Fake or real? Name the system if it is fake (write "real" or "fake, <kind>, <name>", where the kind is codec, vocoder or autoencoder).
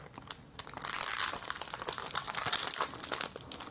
real